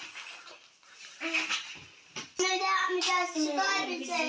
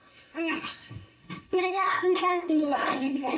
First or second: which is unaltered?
first